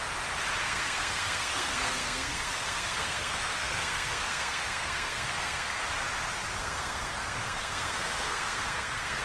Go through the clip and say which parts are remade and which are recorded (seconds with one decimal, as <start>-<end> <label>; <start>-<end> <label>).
0.0-0.6 recorded; 0.6-5.8 remade; 5.8-6.6 recorded; 6.6-9.2 remade